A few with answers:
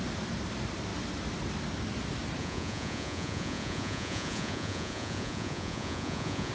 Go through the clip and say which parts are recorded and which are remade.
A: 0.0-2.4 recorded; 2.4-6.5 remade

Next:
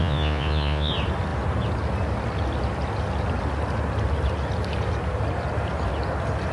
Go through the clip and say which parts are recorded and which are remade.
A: 0.0-0.9 remade; 0.9-6.5 recorded

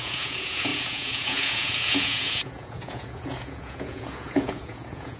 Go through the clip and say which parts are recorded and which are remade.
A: 0.0-5.2 remade

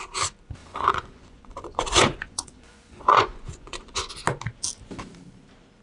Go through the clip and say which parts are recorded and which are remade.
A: 0.0-0.6 recorded; 0.6-4.1 remade; 4.1-5.8 recorded

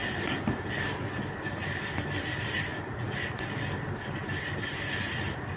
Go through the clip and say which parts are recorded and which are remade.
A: 0.0-5.6 recorded

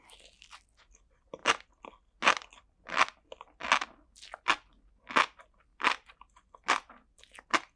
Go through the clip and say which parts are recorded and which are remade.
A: 0.0-7.8 recorded